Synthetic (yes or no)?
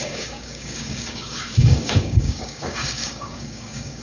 yes